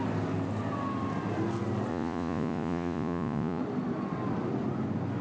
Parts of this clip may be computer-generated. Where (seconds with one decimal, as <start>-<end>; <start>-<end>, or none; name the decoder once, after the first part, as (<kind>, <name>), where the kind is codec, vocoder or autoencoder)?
1.9-3.6 (vocoder, Vocos)